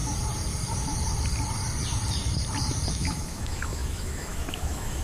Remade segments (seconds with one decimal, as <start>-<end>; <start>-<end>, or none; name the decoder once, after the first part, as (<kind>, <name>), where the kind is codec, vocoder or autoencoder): 2.9-5.0 (autoencoder, DAC-VAE)